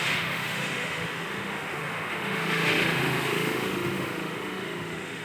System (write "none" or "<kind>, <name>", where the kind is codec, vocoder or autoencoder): autoencoder, DAC-VAE